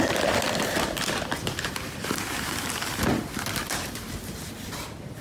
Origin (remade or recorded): remade